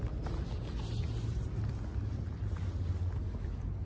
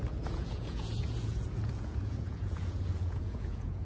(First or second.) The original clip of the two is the first